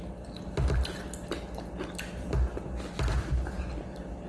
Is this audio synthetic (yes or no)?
no